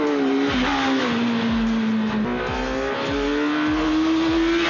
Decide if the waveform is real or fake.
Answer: real